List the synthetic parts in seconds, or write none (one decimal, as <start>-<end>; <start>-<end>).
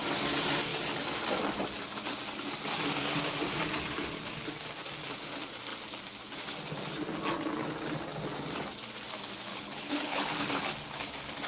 9.5-10.6